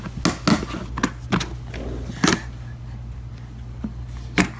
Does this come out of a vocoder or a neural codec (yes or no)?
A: no